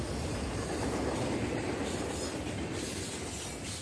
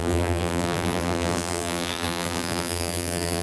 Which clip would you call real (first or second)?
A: first